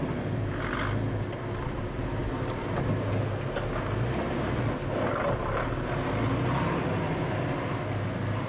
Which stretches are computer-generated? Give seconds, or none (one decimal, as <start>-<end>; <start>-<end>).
none